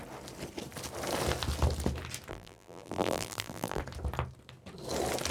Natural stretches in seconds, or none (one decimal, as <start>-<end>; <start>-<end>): 0.0-2.3; 3.8-5.3